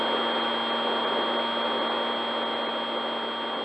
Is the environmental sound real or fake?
real